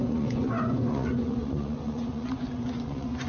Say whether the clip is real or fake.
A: fake